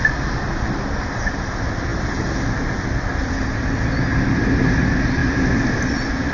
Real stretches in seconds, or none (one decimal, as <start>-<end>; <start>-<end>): 0.0-6.3